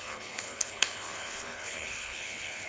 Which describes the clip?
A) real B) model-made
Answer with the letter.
B